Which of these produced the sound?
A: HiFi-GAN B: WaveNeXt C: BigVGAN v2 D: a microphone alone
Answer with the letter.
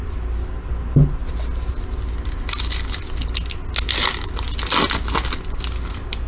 D